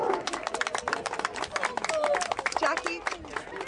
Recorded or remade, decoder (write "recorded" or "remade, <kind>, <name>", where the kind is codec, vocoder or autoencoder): recorded